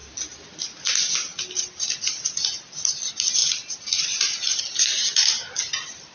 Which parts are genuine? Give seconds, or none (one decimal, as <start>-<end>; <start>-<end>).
0.0-6.1